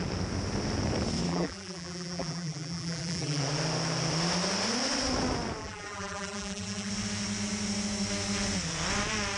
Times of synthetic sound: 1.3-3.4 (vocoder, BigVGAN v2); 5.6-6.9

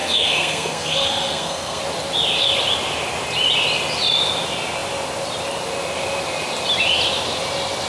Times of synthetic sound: 0.0-1.8 (codec, SNAC)

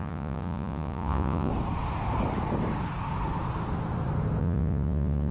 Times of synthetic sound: 0.0-1.5 (vocoder, Vocos); 4.4-5.3

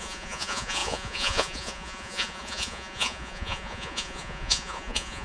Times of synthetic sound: 0.0-5.2 (vocoder, Vocos)

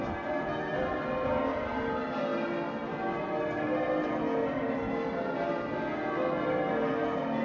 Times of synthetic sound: none

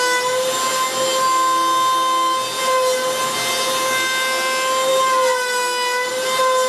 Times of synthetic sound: none

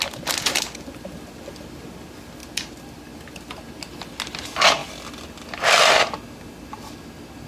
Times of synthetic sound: none